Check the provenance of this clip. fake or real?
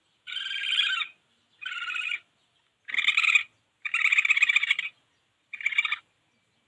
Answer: real